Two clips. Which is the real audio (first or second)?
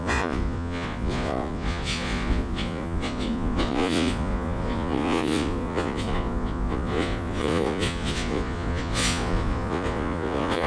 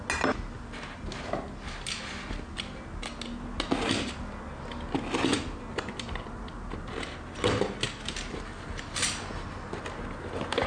second